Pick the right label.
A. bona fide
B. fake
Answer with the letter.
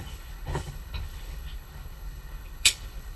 B